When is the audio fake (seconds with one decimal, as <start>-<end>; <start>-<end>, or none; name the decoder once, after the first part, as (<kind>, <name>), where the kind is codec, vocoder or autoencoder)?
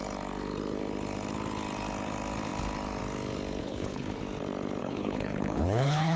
3.6-4.2 (codec, HILCodec); 4.8-6.2